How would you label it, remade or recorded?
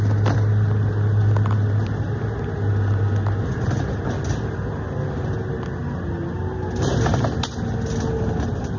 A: recorded